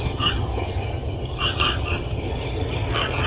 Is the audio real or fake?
fake